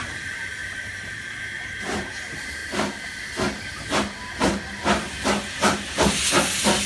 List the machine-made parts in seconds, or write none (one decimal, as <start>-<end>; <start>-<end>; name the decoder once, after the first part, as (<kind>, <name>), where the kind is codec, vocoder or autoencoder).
0.0-0.6 (vocoder, BigVGAN v2); 1.8-2.6